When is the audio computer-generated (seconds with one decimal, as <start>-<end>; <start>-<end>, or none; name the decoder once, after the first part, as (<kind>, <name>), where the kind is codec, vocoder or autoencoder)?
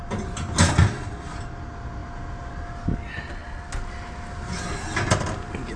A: none